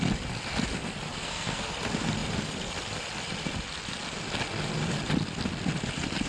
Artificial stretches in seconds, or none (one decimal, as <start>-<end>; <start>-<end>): 1.1-1.7